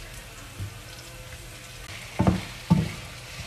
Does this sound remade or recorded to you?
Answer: recorded